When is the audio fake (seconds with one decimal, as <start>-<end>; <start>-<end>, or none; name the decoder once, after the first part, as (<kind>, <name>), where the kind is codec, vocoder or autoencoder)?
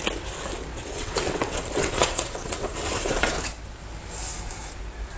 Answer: 0.7-3.3 (vocoder, WaveNeXt)